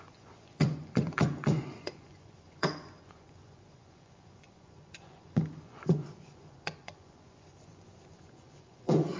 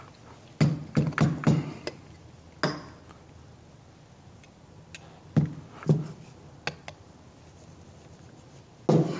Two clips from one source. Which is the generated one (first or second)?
first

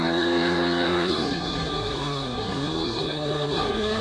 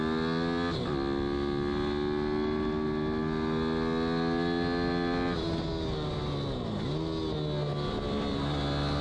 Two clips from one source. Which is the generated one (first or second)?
first